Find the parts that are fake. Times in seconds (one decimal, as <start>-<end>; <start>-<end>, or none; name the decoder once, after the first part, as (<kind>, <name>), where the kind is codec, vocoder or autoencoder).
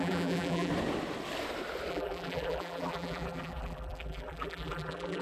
0.0-0.7 (vocoder, BigVGAN v2); 1.9-5.2